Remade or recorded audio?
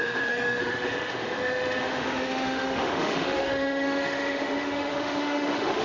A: remade